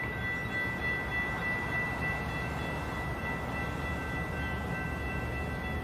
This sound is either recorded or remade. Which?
recorded